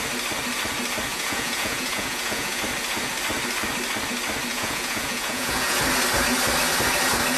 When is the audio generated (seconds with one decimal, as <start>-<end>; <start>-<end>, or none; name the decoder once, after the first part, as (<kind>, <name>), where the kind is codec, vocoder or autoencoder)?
1.1-2.6 (vocoder, Vocos); 4.5-5.8